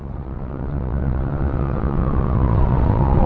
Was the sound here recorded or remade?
remade